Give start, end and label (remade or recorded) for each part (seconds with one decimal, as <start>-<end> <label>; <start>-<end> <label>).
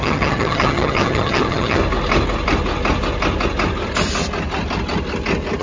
0.0-1.8 remade; 1.8-5.6 recorded